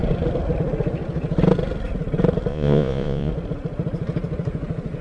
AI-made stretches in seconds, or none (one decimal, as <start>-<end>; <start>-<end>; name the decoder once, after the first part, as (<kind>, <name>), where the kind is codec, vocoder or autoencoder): 2.5-3.3 (vocoder, Vocos)